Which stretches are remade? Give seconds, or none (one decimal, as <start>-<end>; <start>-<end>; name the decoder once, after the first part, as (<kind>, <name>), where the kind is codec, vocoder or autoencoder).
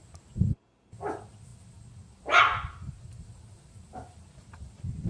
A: none